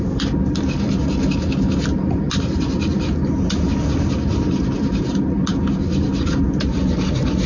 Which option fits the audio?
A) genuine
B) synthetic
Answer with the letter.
A